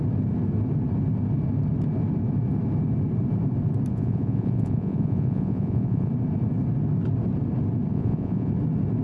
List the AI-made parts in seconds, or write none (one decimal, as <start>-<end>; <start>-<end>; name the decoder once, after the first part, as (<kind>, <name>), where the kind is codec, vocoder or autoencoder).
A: 3.9-6.1 (vocoder, Vocos); 7.9-8.5